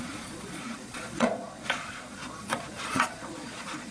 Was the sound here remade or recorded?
remade